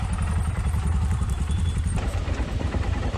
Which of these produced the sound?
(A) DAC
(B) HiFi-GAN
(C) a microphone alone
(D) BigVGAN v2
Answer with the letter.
D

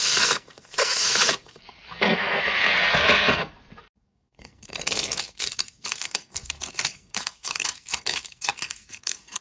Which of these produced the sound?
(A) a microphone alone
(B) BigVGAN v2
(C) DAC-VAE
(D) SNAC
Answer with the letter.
D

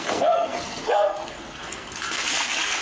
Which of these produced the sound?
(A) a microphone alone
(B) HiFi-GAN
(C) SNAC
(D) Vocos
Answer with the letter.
C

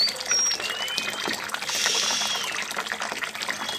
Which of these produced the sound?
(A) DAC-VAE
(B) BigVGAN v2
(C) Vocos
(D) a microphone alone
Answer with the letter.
D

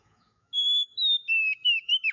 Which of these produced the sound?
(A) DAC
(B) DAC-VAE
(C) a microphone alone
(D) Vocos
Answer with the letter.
B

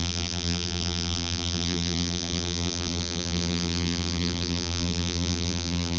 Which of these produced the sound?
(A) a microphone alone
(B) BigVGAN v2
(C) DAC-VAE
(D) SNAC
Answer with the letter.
B